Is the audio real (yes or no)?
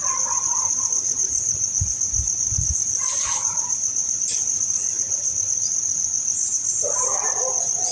no